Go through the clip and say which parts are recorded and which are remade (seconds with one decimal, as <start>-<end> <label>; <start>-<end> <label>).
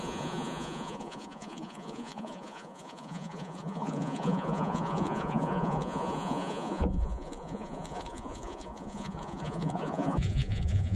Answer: 0.0-11.0 remade